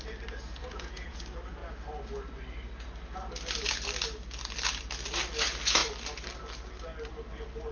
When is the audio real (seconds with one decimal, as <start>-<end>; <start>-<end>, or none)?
0.0-0.6; 1.2-7.7

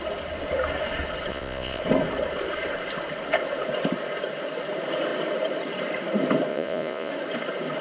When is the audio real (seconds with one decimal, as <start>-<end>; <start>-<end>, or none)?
0.0-1.3; 1.8-6.5; 7.1-7.8

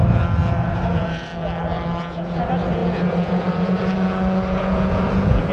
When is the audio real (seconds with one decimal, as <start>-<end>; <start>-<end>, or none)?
0.0-0.7; 1.3-2.0

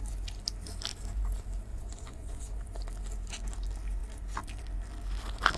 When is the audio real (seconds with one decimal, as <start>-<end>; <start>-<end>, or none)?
0.0-1.7; 2.5-5.6

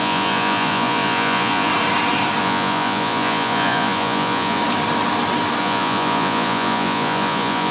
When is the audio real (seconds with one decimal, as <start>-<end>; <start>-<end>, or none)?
1.7-2.4; 4.6-5.6